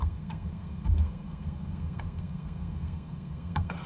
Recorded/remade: remade